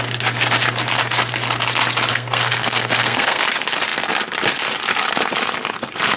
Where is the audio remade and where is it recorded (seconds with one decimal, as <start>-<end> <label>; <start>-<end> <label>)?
0.0-2.1 recorded; 2.1-3.4 remade; 3.4-6.2 recorded